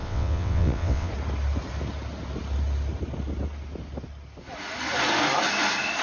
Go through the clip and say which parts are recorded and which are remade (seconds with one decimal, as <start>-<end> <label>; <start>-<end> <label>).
0.0-1.1 remade; 1.1-6.0 recorded